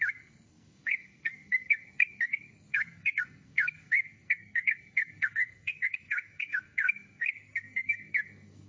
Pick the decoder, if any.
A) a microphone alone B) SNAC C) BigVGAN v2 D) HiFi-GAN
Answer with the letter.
B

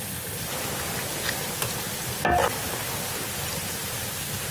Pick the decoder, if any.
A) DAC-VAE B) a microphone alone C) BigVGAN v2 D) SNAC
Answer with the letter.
B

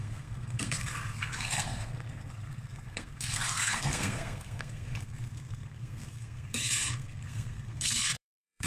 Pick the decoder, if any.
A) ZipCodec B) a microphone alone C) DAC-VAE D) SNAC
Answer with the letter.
D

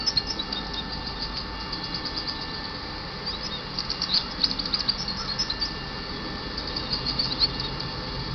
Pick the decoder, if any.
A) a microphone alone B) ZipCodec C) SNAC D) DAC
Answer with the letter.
A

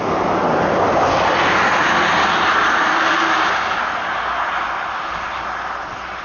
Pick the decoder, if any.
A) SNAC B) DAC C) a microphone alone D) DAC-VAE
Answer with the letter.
C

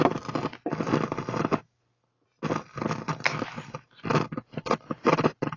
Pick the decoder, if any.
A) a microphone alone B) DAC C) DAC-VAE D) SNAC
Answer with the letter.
A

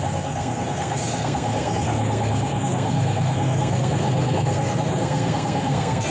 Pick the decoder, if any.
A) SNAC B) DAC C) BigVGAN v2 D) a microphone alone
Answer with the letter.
A